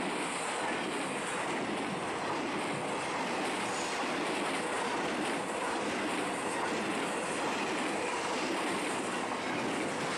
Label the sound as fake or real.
real